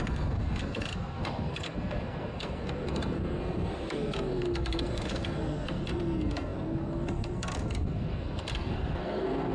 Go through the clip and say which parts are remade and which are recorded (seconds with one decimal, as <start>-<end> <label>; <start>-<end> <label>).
0.0-9.5 remade